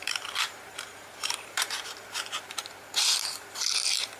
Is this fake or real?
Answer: fake